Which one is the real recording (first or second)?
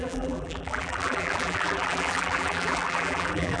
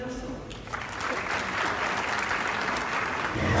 second